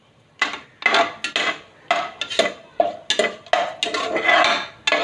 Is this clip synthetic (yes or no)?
no